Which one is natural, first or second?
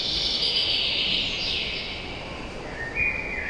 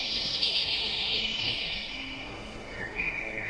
first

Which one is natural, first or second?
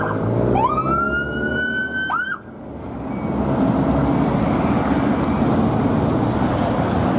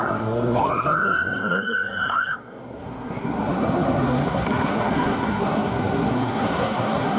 first